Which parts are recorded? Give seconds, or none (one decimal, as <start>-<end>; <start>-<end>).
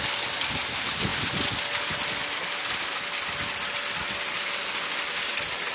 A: 0.0-5.7